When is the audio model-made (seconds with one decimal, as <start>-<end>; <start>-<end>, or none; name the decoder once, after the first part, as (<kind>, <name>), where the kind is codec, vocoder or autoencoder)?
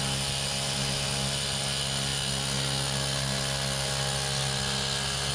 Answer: none